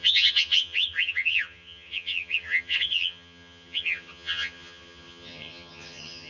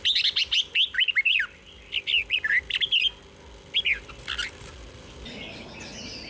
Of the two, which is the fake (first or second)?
first